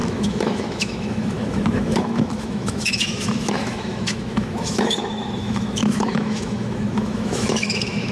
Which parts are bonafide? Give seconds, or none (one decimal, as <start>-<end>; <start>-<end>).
none